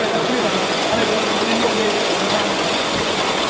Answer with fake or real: fake